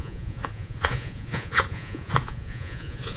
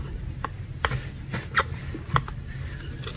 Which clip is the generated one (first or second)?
first